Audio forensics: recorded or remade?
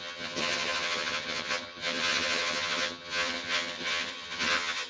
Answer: remade